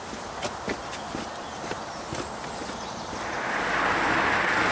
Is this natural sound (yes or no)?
yes